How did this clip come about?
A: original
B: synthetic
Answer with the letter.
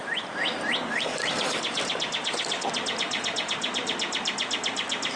A